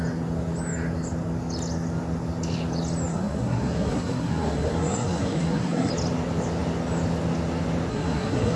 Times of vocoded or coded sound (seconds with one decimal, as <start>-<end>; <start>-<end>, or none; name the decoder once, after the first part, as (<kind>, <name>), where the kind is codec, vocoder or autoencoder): 3.1-5.9 (codec, SNAC); 7.9-8.6

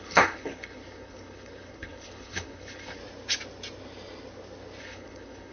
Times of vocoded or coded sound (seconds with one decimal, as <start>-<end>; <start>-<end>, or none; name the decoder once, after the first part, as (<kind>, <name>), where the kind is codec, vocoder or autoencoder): 0.0-3.0 (codec, HILCodec); 4.8-5.5

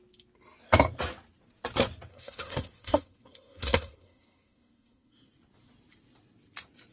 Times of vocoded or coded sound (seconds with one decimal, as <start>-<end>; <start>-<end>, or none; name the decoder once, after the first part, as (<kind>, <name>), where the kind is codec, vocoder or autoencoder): 2.1-5.3 (codec, SNAC)

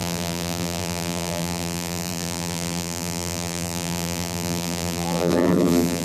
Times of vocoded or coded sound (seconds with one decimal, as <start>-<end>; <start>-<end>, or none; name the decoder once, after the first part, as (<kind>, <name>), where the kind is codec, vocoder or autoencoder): 0.0-6.0 (vocoder, BigVGAN v2)

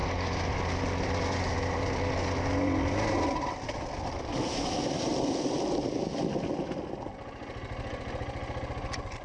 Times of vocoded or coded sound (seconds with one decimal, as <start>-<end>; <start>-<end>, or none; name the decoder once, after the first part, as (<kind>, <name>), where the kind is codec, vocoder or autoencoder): none

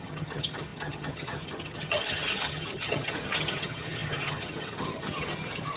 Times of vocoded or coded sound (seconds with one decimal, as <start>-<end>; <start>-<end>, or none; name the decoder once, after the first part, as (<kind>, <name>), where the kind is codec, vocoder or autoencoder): 0.0-5.8 (vocoder, HiFi-GAN)

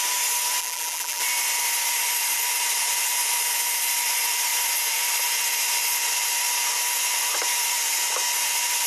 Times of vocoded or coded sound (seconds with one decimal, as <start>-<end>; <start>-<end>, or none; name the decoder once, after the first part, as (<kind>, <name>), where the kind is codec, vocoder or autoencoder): 0.6-1.2 (vocoder, BigVGAN v2)